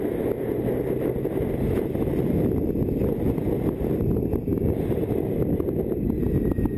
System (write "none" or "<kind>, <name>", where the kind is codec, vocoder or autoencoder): none